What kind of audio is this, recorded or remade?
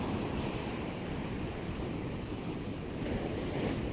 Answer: remade